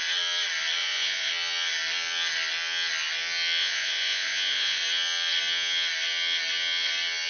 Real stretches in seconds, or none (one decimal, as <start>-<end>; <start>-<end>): 0.0-0.8; 1.3-3.6; 4.8-7.3